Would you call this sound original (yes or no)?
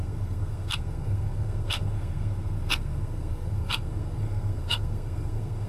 no